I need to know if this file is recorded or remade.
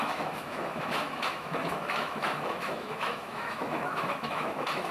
remade